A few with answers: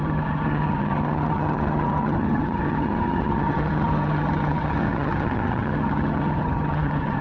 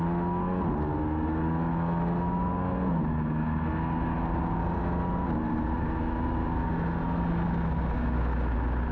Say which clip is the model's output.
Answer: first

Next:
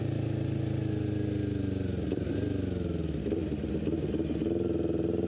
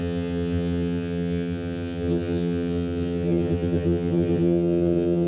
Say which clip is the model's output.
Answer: second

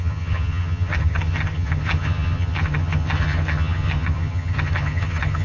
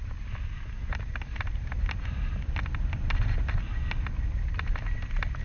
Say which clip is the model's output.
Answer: first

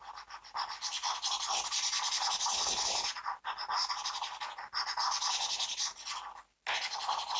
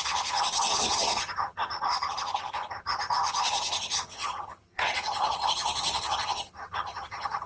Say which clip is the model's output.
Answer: second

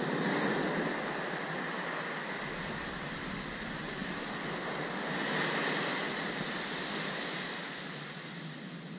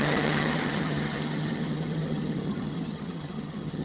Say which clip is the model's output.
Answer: second